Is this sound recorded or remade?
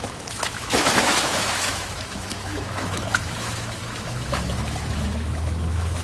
remade